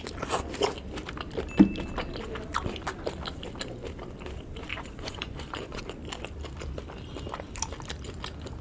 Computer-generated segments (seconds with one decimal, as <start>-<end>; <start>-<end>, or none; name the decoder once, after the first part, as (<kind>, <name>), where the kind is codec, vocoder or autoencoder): 4.7-5.8 (vocoder, Vocos)